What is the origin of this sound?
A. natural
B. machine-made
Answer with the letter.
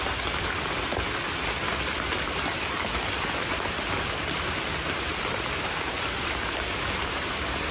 A